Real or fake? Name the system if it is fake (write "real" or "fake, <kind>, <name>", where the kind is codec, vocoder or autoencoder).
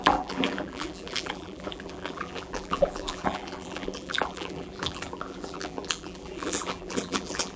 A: fake, vocoder, BigVGAN v2